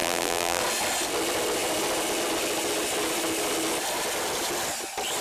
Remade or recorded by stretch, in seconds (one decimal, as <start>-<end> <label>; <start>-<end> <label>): 0.0-0.6 remade; 0.6-5.2 recorded